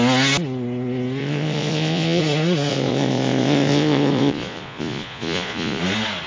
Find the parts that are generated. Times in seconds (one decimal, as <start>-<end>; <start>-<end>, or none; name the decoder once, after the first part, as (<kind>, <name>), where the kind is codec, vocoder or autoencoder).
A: 1.2-2.2 (vocoder, Vocos); 2.7-5.8